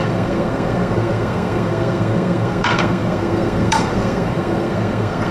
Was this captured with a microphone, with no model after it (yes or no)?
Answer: no